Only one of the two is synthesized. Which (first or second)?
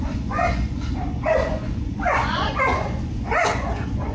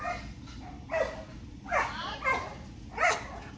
first